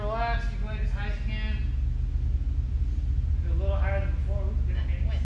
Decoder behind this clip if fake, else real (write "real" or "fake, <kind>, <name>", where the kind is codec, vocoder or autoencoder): real